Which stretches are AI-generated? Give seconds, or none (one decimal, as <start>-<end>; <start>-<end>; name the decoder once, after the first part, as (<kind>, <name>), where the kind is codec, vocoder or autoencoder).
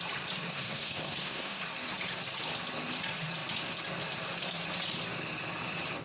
0.5-1.6 (codec, SNAC)